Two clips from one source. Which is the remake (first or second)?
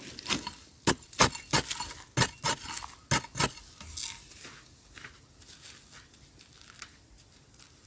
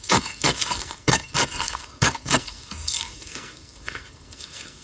second